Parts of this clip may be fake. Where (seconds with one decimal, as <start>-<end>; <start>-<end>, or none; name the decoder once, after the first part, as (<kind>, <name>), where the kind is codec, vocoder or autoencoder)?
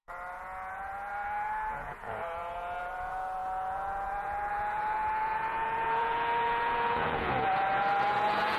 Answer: 0.0-8.6 (vocoder, Vocos)